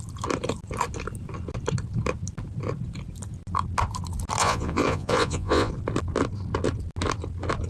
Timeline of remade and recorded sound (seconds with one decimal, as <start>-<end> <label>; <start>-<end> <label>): 0.0-4.4 recorded; 4.4-5.7 remade; 5.7-7.7 recorded